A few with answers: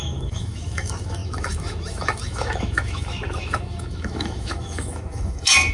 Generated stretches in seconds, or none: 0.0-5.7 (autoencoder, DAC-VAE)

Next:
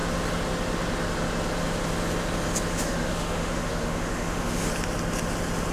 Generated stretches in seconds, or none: 2.7-4.7 (autoencoder, DAC-VAE)

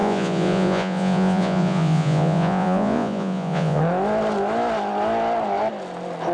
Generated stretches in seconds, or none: 0.0-3.8 (vocoder, Vocos)

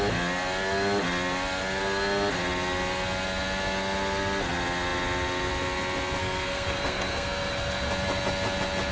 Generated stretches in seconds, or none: 6.2-7.9 (codec, SNAC)